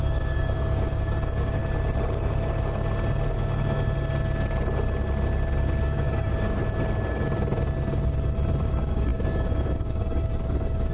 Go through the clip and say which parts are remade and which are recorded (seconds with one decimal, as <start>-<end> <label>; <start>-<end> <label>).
0.0-1.6 remade; 1.6-5.8 recorded; 5.8-6.6 remade; 6.6-8.7 recorded; 8.7-10.9 remade